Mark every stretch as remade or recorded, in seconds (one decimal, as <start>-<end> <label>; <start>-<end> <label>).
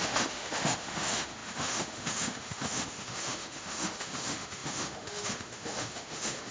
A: 0.0-6.5 remade